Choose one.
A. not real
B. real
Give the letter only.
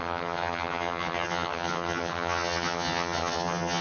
A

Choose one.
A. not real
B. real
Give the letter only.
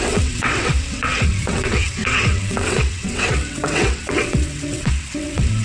A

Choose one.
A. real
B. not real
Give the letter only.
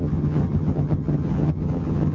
B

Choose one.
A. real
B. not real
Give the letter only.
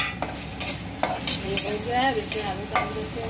A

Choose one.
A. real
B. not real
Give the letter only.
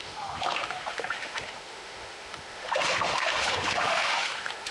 B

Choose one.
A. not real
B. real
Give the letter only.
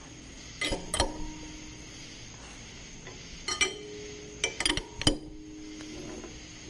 B